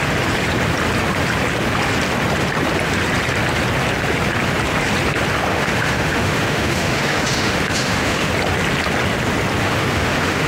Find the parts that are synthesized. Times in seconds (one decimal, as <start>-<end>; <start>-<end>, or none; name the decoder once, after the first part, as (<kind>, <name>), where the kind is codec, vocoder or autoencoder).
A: 5.5-8.3 (autoencoder, DAC-VAE); 9.6-10.5